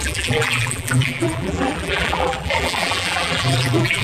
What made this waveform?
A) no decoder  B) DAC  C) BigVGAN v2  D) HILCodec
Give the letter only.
C